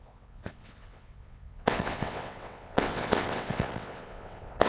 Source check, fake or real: fake